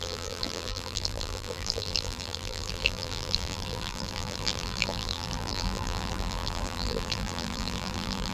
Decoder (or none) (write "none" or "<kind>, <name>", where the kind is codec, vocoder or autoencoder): vocoder, BigVGAN v2